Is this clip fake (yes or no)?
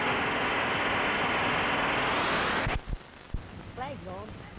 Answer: no